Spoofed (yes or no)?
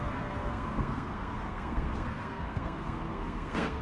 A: yes